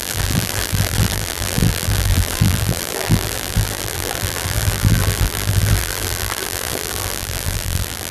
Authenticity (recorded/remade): remade